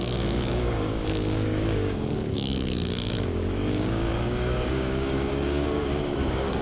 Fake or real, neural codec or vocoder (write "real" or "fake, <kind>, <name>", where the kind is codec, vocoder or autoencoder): fake, codec, DAC